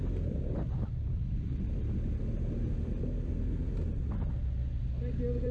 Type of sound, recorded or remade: recorded